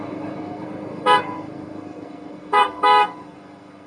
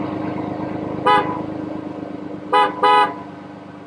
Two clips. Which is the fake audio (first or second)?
first